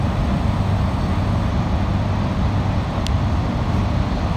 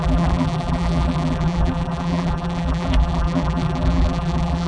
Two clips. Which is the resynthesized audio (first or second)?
second